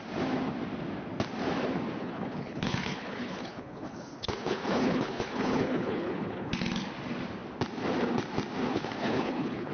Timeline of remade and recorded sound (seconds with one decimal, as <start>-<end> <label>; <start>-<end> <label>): 0.0-2.0 recorded; 2.0-6.5 remade; 6.5-8.7 recorded; 8.7-9.7 remade